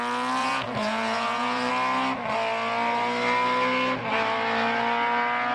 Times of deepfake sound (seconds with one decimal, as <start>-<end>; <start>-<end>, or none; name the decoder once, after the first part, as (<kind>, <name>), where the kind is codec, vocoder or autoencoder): 0.4-1.7 (vocoder, Vocos)